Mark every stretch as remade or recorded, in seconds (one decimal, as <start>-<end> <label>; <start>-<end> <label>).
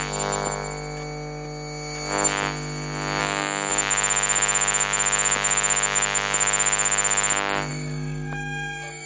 0.0-3.2 recorded; 3.2-3.7 remade; 3.7-7.7 recorded; 7.7-9.1 remade